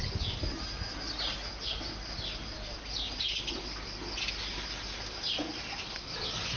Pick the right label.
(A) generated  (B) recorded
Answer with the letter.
B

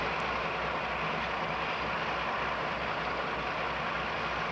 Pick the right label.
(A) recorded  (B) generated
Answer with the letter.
A